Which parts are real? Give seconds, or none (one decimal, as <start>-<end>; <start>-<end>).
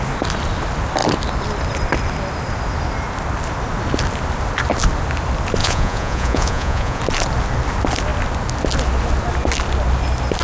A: 0.0-5.6; 7.0-10.4